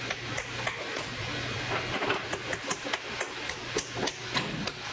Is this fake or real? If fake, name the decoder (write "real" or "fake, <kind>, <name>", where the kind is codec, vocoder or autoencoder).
real